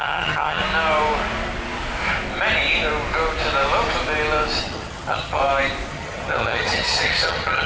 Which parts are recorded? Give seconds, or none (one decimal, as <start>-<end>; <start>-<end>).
0.6-4.6; 5.4-5.9